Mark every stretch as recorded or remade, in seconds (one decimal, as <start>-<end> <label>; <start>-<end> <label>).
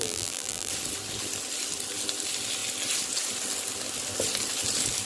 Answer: 0.0-0.7 remade; 0.7-5.1 recorded